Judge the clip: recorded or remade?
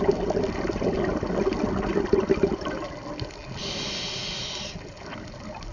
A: recorded